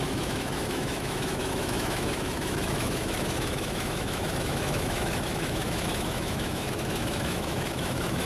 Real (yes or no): no